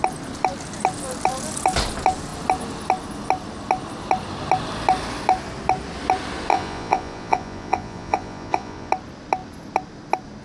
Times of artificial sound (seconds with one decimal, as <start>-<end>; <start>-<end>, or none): 6.5-8.9